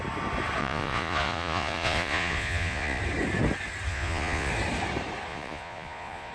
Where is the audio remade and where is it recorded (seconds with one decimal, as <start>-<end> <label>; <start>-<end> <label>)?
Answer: 0.0-0.6 recorded; 0.6-3.0 remade; 3.0-3.9 recorded; 3.9-4.5 remade; 4.5-5.3 recorded; 5.3-6.3 remade